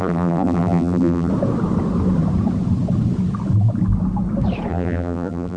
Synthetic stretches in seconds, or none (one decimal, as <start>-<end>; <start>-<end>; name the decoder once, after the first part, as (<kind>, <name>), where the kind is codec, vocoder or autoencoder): 0.0-1.3 (vocoder, BigVGAN v2); 4.7-5.6